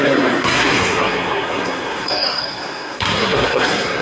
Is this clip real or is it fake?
fake